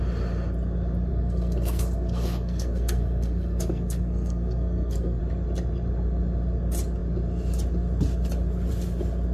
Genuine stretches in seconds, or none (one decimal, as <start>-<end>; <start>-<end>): 0.0-1.1; 5.2-9.3